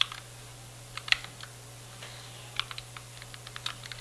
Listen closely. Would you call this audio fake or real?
real